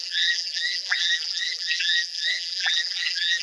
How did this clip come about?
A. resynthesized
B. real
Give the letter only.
A